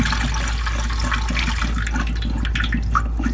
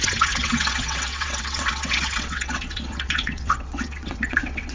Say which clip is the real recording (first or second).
first